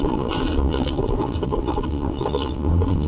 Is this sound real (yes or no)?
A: no